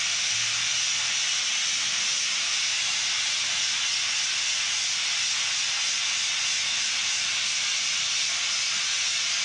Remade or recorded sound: recorded